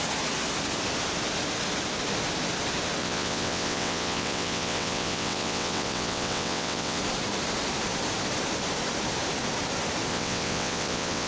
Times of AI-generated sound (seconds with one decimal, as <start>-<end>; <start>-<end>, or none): 3.0-7.0; 10.1-11.3